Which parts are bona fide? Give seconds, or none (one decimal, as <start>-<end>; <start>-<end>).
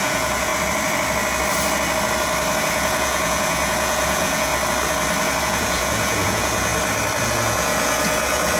0.5-2.6; 4.5-5.4; 6.7-7.2